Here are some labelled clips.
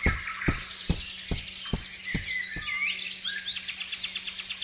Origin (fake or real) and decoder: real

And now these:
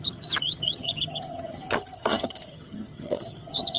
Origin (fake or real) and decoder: fake, vocoder, HiFi-GAN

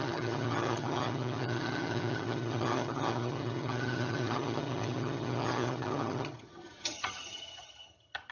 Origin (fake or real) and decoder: fake, vocoder, HiFi-GAN